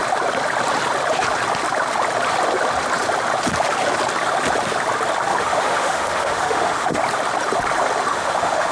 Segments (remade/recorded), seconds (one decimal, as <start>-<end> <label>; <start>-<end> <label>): 0.0-5.3 recorded; 5.3-7.0 remade; 7.0-8.1 recorded; 8.1-8.7 remade